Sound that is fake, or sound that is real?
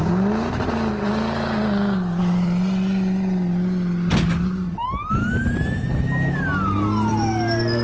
real